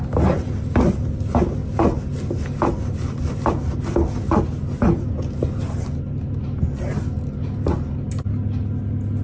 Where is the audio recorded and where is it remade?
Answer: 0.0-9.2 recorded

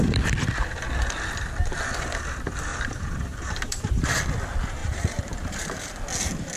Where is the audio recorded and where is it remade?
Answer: 0.0-2.7 recorded; 2.7-4.2 remade; 4.2-4.8 recorded; 4.8-5.9 remade; 5.9-6.6 recorded

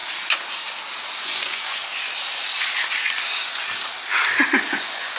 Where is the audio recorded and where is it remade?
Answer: 0.0-1.2 recorded; 1.2-1.8 remade; 1.8-4.5 recorded; 4.5-5.2 remade

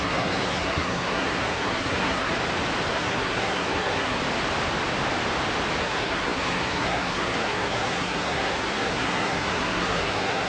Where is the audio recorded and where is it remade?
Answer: 0.0-2.3 remade; 2.3-2.9 recorded; 2.9-4.2 remade; 4.2-5.8 recorded; 5.8-10.5 remade

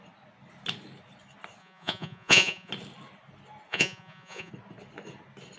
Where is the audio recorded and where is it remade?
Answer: 0.0-1.6 recorded; 1.6-2.7 remade; 2.7-3.7 recorded; 3.7-4.5 remade; 4.5-5.6 recorded

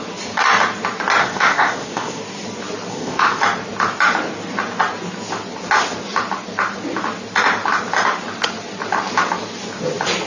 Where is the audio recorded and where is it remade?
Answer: 0.0-1.2 recorded; 1.2-2.2 remade; 2.2-2.9 recorded; 2.9-3.4 remade; 3.4-10.3 recorded

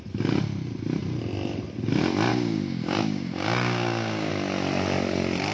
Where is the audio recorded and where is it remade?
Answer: 0.0-2.3 recorded; 2.3-4.3 remade; 4.3-5.5 recorded